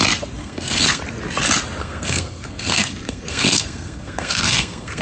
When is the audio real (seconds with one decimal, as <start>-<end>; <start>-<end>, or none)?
0.0-0.4; 1.0-1.8